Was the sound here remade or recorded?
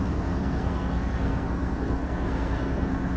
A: remade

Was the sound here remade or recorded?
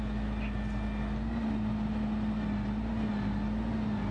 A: recorded